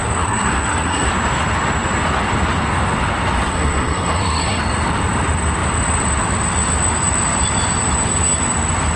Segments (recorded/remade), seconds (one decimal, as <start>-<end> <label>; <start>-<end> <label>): 0.0-1.1 remade; 1.1-3.5 recorded; 3.5-4.6 remade; 4.6-9.0 recorded